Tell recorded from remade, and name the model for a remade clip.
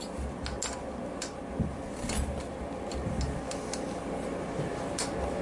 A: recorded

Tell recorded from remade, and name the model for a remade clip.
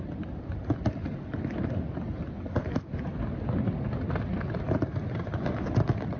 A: recorded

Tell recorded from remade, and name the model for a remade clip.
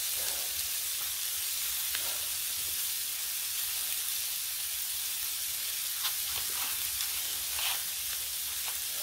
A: recorded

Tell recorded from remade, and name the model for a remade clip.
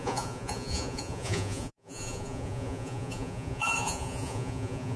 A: remade, vocoder, Vocos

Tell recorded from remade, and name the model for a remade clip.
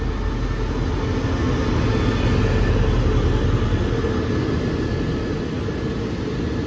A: recorded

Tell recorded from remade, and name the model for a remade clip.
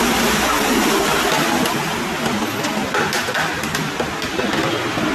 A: recorded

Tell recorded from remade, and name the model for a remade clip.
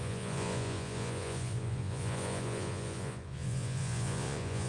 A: remade, vocoder, Vocos